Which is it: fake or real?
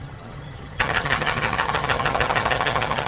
fake